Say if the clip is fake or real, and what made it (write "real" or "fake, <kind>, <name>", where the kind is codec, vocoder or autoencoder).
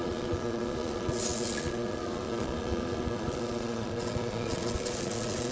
fake, vocoder, Vocos